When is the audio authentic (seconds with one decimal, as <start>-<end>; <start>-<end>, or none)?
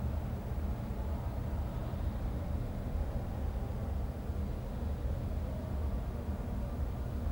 0.0-7.3